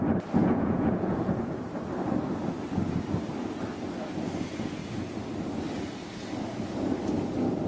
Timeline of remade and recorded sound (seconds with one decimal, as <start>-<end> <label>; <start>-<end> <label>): 0.0-0.4 recorded; 0.4-1.6 remade; 1.6-7.7 recorded